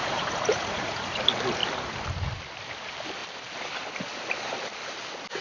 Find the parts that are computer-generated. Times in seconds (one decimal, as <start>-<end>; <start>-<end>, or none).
0.0-1.2